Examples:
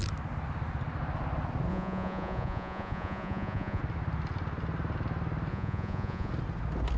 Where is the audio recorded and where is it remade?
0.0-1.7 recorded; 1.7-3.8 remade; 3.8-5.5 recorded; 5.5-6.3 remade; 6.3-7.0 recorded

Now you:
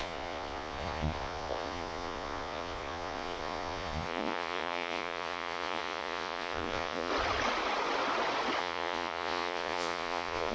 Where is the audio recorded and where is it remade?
0.0-7.1 remade; 7.1-8.6 recorded; 8.6-10.5 remade

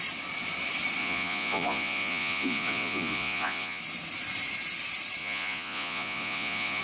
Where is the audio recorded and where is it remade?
0.0-1.0 recorded; 1.0-3.8 remade; 3.8-5.2 recorded; 5.2-6.8 remade

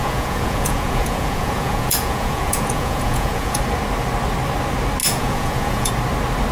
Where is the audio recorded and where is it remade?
0.0-3.6 remade; 3.6-5.0 recorded; 5.0-5.9 remade; 5.9-6.5 recorded